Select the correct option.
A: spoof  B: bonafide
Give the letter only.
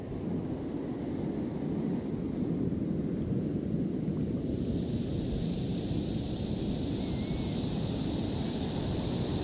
B